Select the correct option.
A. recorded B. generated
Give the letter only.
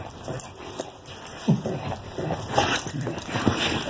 A